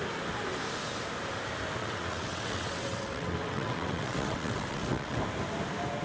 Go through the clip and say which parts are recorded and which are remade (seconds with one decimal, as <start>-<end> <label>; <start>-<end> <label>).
0.0-1.8 recorded; 1.8-5.2 remade; 5.2-6.0 recorded